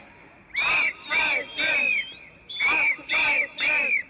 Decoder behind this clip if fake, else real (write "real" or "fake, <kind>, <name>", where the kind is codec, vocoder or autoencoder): real